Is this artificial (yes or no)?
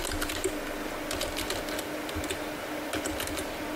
no